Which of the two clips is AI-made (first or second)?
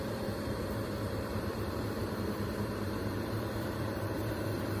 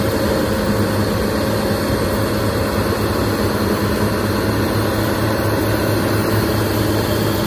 first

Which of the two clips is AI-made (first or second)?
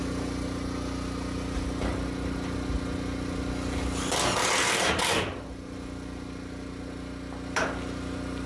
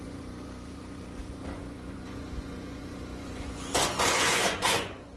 second